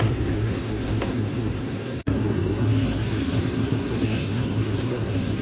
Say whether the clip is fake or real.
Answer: fake